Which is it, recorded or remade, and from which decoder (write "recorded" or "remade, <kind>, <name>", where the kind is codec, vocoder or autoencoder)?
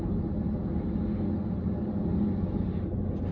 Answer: recorded